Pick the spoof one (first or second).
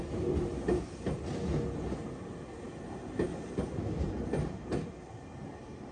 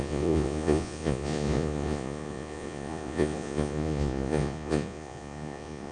second